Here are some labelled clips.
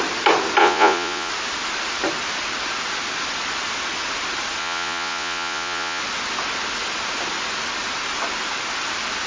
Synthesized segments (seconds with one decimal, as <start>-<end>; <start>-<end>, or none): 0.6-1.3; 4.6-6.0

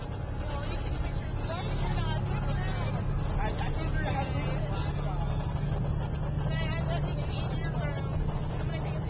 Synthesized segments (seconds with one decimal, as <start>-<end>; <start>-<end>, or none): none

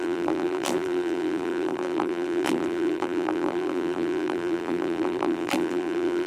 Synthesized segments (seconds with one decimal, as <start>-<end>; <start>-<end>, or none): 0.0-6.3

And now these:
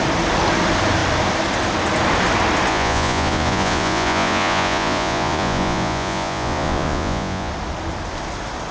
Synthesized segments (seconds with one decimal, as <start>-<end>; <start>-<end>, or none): 2.7-7.5